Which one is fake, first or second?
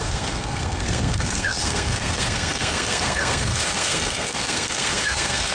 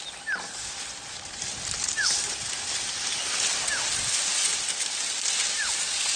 first